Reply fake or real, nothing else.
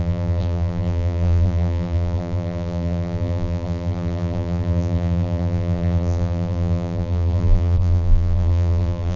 fake